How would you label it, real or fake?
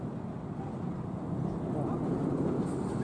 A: real